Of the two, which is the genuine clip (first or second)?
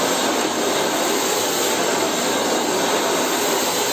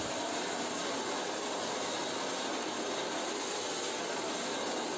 second